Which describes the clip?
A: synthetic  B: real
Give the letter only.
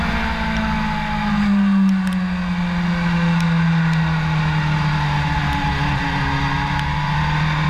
B